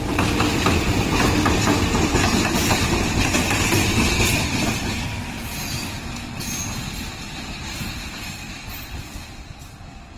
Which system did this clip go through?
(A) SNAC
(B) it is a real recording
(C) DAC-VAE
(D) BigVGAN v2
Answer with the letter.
B